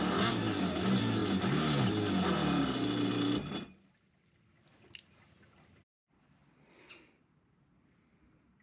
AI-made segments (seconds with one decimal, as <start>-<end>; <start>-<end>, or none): none